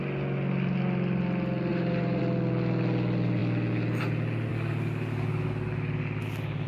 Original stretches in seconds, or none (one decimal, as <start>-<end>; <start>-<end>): 0.0-1.7; 2.2-6.7